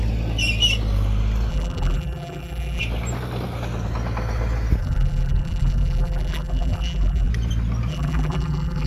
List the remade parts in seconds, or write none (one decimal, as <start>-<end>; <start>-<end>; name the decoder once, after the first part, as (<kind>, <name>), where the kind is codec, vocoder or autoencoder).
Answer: 1.5-2.8 (vocoder, BigVGAN v2); 4.8-7.3; 7.9-8.9